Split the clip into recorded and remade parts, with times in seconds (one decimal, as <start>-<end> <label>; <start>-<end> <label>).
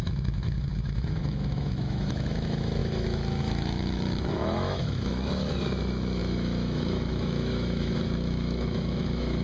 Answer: 0.0-9.4 remade